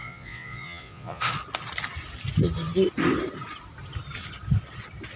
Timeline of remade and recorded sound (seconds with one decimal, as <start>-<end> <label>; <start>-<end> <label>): 0.0-1.2 remade; 1.2-5.2 recorded